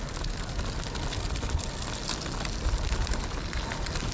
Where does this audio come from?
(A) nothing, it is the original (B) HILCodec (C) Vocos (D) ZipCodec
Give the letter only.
A